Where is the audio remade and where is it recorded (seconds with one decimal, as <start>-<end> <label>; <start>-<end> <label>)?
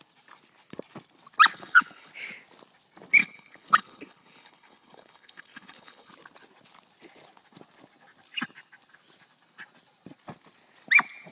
0.0-1.5 recorded; 1.5-2.1 remade; 2.1-3.2 recorded; 3.2-6.1 remade; 6.1-11.3 recorded